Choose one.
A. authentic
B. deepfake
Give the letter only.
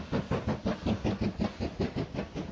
A